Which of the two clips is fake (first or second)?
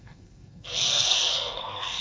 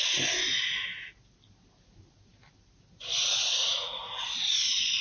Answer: first